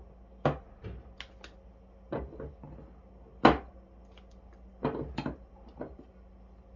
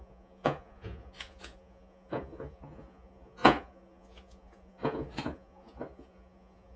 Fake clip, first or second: second